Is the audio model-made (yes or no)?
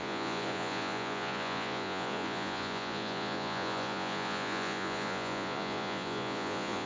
yes